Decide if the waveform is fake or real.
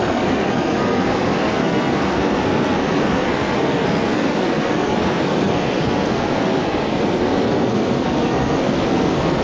fake